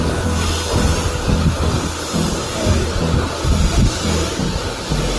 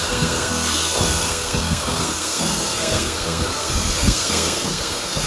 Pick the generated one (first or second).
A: second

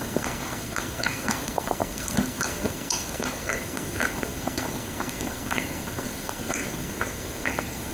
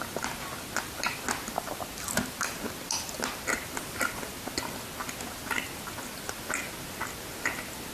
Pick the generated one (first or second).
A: first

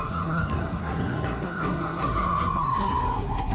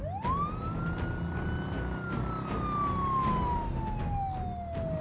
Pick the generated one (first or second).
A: first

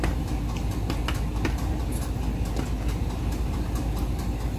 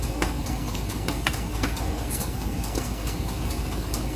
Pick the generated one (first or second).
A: second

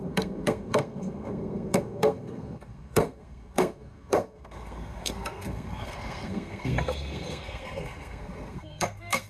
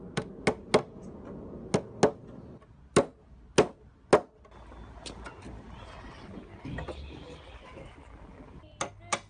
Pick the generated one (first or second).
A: first